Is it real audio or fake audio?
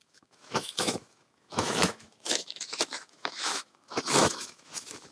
fake